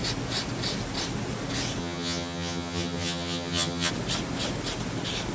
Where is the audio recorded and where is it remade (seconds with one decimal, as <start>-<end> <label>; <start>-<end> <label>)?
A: 0.0-1.8 recorded; 1.8-3.9 remade; 3.9-5.3 recorded